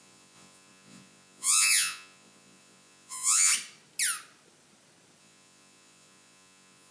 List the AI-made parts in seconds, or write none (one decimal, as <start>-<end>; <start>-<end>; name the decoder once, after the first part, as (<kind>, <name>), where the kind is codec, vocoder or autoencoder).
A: 0.0-3.5 (vocoder, Vocos); 5.2-6.9